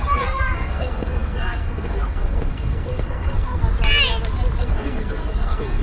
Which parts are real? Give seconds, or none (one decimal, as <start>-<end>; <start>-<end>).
3.6-4.6